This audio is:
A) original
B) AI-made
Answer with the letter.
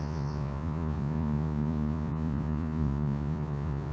B